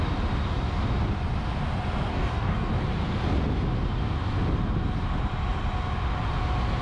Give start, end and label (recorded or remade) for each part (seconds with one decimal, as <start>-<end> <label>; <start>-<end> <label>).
0.0-2.1 recorded; 2.1-2.7 remade; 2.7-6.8 recorded